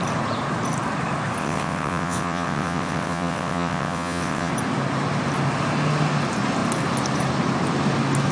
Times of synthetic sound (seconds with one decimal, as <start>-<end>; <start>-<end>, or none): 1.4-4.5